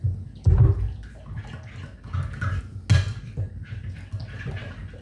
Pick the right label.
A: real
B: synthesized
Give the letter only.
A